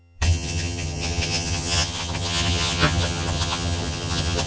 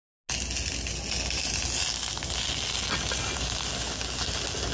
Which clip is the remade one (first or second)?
first